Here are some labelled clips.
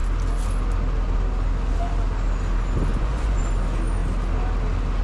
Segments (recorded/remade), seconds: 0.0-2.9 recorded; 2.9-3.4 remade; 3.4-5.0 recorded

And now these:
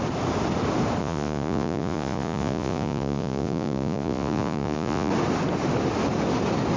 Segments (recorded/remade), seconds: 0.0-1.0 recorded; 1.0-5.1 remade; 5.1-6.8 recorded

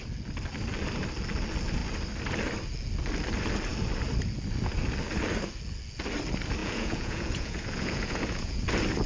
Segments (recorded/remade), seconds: 0.0-6.6 recorded; 6.6-8.6 remade; 8.6-9.1 recorded

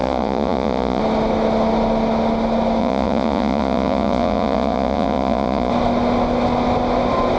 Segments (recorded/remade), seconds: 0.0-1.0 remade; 1.0-2.8 recorded; 2.8-5.7 remade; 5.7-7.4 recorded

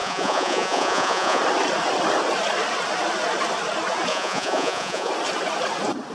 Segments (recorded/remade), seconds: 0.0-1.4 remade; 1.4-4.1 recorded; 4.1-5.1 remade; 5.1-6.1 recorded

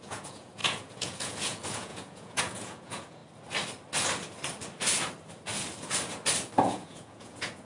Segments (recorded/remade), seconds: 0.0-3.2 remade; 3.2-6.6 recorded; 6.6-7.6 remade

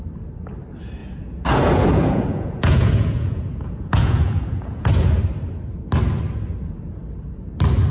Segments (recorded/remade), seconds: 0.0-1.0 recorded; 1.0-5.2 remade; 5.2-7.9 recorded